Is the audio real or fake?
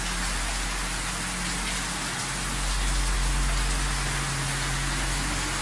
real